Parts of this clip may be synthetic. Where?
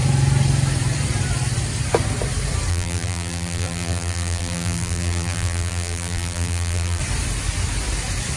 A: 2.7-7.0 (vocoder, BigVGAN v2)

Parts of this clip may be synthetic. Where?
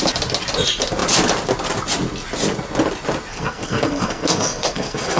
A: 3.3-5.2 (codec, SNAC)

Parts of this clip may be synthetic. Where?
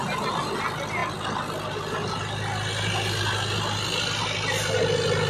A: none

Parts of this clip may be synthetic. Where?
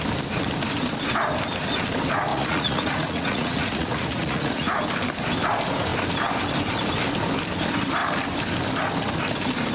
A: 2.3-4.8 (vocoder, Vocos)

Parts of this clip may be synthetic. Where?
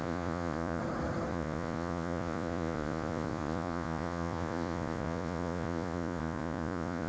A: 0.0-0.8 (vocoder, Vocos); 1.3-7.1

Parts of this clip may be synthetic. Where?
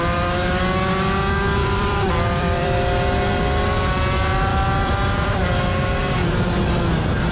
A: 1.6-2.8 (vocoder, BigVGAN v2); 4.5-5.5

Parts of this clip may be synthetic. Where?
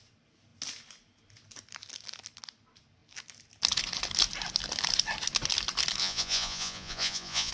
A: 6.0-7.5 (vocoder, Vocos)